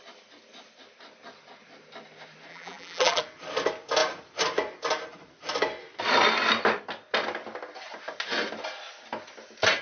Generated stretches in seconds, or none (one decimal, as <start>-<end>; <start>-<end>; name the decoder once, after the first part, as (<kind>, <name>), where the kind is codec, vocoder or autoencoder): 2.5-3.2 (vocoder, BigVGAN v2)